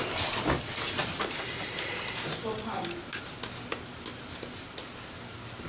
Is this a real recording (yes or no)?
yes